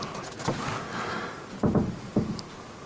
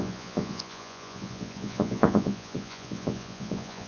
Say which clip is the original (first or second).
first